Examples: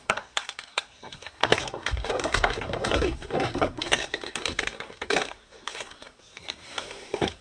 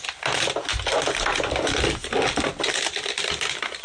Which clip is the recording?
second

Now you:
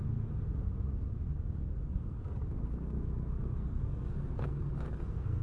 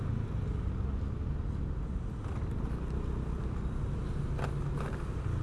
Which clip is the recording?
second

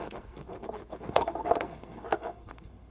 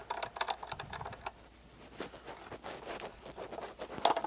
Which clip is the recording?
second